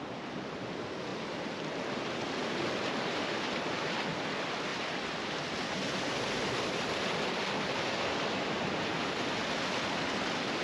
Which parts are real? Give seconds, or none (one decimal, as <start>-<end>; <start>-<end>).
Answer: 0.0-4.7; 6.1-10.6